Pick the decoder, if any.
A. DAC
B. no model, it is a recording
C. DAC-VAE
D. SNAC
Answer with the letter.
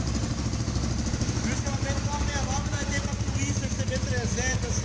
B